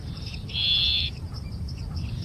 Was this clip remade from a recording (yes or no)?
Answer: yes